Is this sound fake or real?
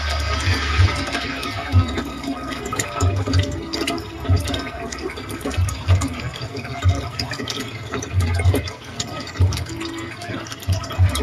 fake